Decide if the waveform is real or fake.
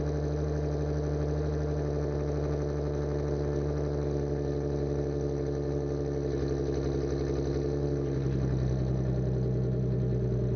real